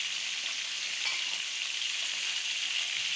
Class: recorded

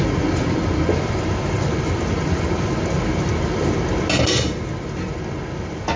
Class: recorded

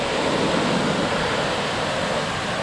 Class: recorded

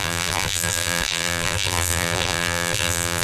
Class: remade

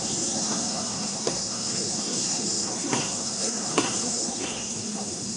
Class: remade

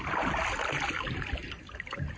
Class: recorded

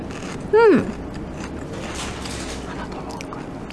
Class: recorded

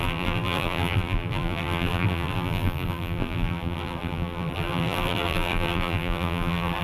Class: remade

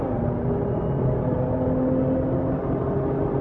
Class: recorded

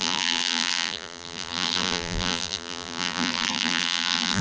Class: remade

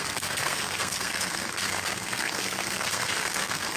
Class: remade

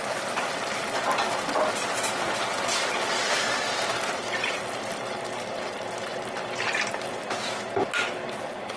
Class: recorded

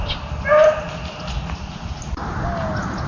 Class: recorded